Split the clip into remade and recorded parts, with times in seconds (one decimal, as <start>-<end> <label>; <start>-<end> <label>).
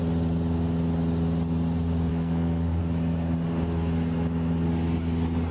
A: 0.0-2.1 recorded; 2.1-2.8 remade; 2.8-5.5 recorded